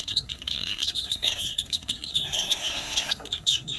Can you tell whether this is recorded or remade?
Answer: remade